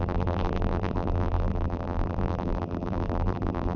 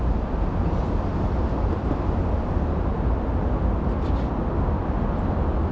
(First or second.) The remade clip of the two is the first